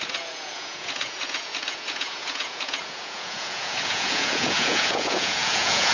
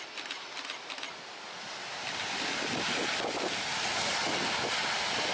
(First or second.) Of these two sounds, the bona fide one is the second